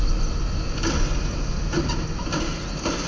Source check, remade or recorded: recorded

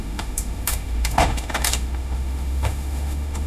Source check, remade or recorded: remade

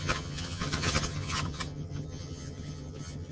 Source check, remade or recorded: remade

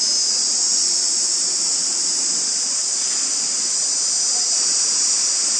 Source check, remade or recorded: recorded